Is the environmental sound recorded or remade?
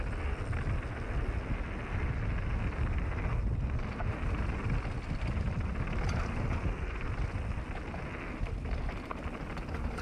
recorded